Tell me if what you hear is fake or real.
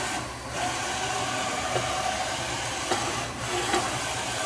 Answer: real